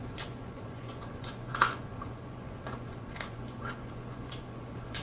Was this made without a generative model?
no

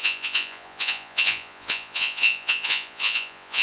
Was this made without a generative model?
no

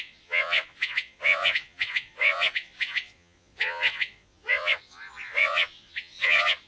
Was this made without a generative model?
no